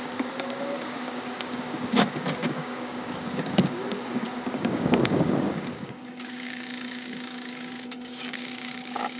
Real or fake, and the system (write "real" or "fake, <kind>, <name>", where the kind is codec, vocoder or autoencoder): fake, codec, DAC